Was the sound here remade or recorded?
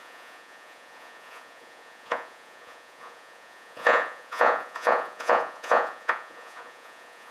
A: remade